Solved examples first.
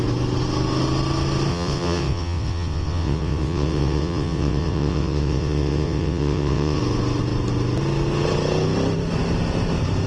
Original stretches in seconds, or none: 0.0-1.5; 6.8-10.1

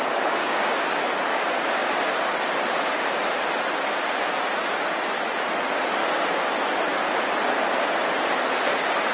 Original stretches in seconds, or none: 0.0-0.4; 1.0-6.0; 6.5-9.1